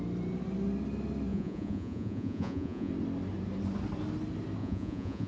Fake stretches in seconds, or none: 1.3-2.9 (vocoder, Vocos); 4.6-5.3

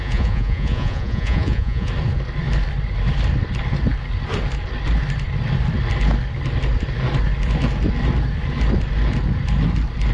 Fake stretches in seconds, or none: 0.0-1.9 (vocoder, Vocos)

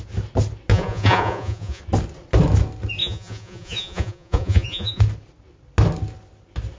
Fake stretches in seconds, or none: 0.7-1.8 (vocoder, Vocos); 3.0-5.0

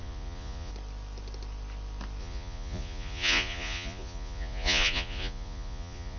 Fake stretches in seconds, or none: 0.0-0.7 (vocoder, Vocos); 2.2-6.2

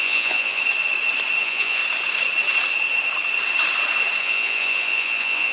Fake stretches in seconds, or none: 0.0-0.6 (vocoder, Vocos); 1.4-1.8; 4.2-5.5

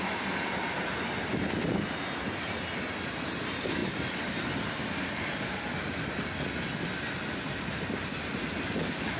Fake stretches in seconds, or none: none